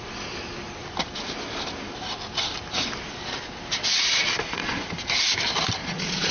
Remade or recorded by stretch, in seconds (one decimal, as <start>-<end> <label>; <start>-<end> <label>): 0.0-4.2 recorded; 4.2-4.8 remade; 4.8-5.8 recorded; 5.8-6.3 remade